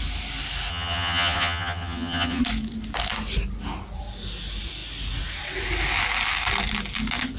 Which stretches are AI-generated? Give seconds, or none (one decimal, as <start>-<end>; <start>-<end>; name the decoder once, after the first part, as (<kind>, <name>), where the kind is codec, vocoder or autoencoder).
0.7-2.4 (vocoder, HiFi-GAN)